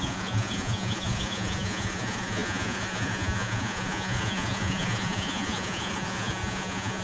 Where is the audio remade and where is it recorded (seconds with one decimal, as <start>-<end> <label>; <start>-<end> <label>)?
0.0-7.0 remade